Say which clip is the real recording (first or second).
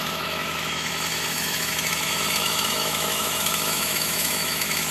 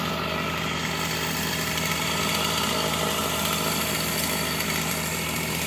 second